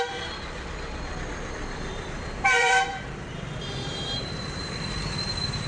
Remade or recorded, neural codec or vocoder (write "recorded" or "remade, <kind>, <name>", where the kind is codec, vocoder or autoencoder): remade, vocoder, BigVGAN v2